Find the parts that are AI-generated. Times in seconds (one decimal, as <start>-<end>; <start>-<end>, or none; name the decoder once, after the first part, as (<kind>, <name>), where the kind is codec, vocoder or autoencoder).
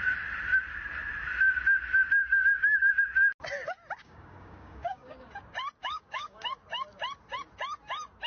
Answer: 2.2-2.9 (codec, DAC); 4.0-5.3; 5.8-6.4